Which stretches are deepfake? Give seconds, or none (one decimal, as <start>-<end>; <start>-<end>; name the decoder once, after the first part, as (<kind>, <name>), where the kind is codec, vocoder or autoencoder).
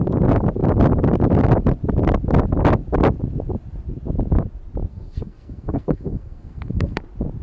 4.9-7.0 (codec, SNAC)